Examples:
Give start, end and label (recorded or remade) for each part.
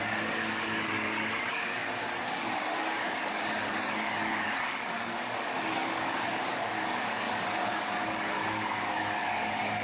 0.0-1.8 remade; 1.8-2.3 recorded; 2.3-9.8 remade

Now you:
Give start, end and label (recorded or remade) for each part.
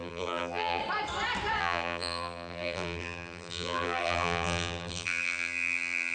0.0-0.8 remade; 0.8-1.6 recorded; 1.6-6.1 remade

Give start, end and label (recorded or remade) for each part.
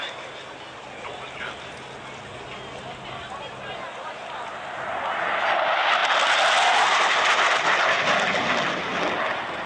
0.0-6.0 recorded; 6.0-6.5 remade; 6.5-9.7 recorded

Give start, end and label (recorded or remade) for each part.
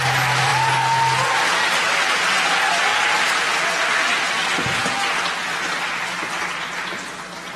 0.0-7.6 recorded